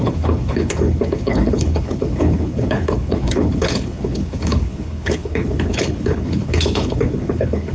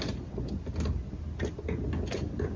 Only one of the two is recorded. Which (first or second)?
second